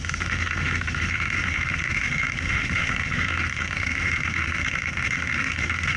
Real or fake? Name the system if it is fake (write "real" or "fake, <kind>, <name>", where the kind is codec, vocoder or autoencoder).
fake, autoencoder, DAC-VAE